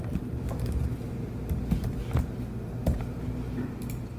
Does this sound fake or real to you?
real